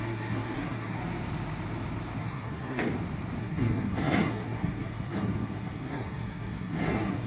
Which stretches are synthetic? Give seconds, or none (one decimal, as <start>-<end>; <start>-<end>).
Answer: 0.0-1.0; 2.2-2.8; 3.4-7.3